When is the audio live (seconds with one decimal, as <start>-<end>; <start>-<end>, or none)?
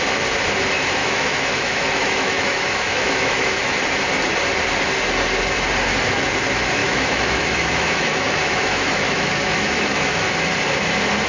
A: 0.0-1.0; 3.7-6.8; 10.3-11.3